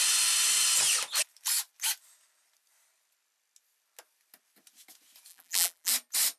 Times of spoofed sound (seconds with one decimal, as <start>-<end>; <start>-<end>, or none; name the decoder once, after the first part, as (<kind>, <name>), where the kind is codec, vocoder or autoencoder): 5.3-5.9 (vocoder, BigVGAN v2)